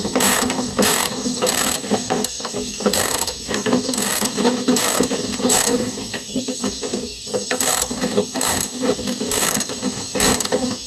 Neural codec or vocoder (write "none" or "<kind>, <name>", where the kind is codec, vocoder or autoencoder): codec, DAC